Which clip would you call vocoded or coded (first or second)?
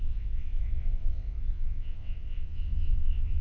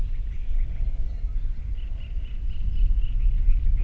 first